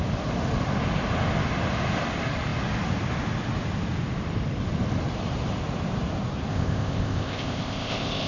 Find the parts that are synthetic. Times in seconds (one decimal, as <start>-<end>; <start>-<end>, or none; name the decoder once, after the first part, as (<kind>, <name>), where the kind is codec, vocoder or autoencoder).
6.5-8.3 (codec, ZipCodec)